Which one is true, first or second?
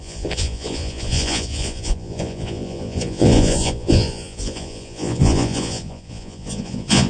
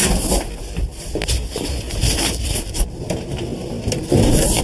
second